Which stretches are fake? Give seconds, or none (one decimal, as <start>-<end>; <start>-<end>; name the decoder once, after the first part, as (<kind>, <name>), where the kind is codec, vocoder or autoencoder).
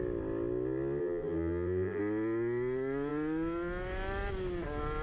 1.0-2.0 (vocoder, BigVGAN v2)